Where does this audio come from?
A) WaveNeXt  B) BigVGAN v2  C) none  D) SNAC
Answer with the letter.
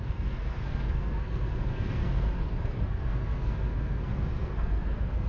D